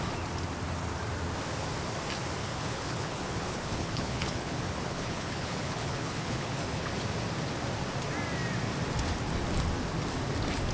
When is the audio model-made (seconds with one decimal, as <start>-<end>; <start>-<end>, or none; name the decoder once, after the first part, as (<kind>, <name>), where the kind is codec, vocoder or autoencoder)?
2.4-6.9 (codec, HILCodec)